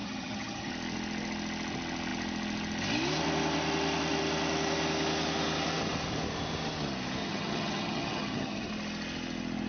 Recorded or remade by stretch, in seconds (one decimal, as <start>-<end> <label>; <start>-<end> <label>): 0.0-0.7 remade; 0.7-7.2 recorded; 7.2-8.7 remade; 8.7-9.7 recorded